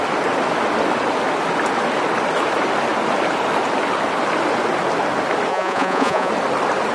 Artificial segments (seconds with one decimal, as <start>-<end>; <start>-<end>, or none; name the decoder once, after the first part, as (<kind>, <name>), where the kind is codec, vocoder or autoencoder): 5.5-6.3 (vocoder, Vocos)

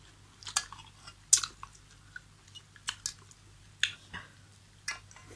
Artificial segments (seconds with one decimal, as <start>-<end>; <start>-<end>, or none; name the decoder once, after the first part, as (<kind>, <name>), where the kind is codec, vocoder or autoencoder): none

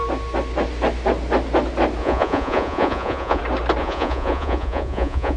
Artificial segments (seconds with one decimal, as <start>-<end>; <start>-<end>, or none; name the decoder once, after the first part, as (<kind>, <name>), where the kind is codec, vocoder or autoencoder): 2.0-3.4 (vocoder, Vocos); 3.8-5.4

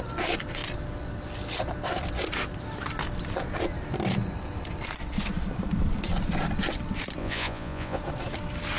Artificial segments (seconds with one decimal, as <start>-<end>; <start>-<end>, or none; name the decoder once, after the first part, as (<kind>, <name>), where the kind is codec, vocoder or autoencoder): 7.2-8.0 (vocoder, Vocos)

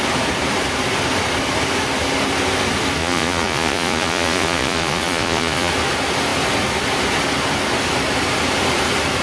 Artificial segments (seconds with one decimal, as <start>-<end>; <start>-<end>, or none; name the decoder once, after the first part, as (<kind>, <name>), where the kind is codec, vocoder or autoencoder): 3.0-5.7 (vocoder, Vocos)

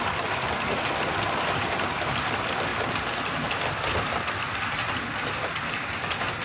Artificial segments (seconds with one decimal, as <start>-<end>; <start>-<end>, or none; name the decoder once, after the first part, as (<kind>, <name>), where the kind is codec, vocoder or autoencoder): none

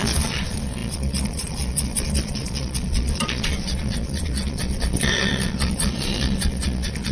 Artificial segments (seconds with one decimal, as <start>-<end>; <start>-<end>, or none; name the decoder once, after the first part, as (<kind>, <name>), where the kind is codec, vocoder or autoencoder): 0.0-7.1 (vocoder, Vocos)